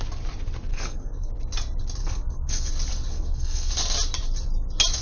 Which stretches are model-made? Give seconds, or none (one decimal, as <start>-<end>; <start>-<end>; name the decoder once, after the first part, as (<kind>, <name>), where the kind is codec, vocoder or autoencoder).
0.7-1.3 (codec, SNAC); 2.0-2.7; 3.1-3.7